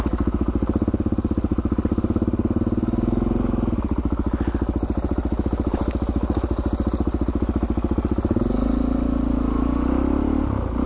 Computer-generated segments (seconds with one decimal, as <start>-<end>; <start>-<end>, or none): none